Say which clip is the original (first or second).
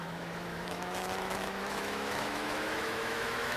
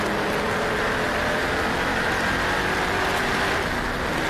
second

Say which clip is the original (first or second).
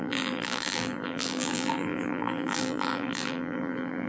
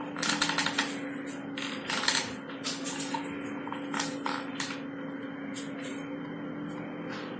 second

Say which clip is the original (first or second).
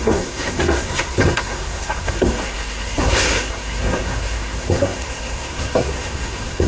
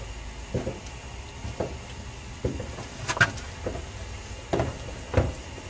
second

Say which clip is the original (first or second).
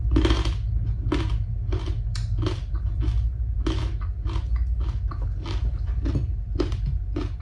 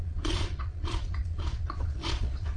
first